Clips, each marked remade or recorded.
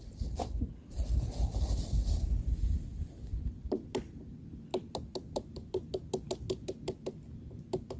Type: recorded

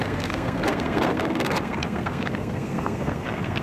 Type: remade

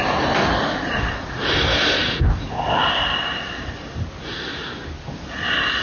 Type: recorded